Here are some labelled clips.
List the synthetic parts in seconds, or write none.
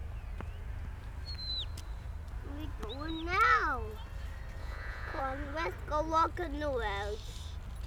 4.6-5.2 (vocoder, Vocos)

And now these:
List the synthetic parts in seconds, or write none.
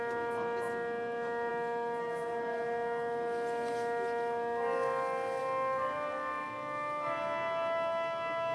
none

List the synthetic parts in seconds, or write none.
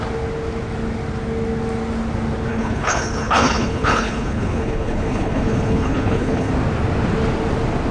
2.5-6.5 (codec, HILCodec)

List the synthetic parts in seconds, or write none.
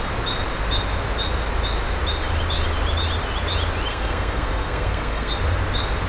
3.9-5.3 (codec, SNAC)